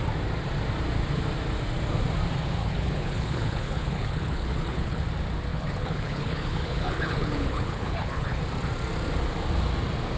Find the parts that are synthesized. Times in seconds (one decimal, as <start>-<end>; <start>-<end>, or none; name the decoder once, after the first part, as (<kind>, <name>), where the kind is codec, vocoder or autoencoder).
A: 2.6-5.0 (codec, HILCodec); 5.5-8.4